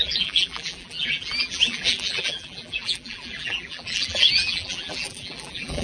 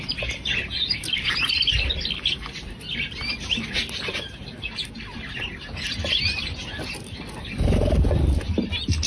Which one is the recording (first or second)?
second